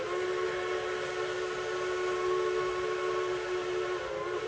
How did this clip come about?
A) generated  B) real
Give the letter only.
B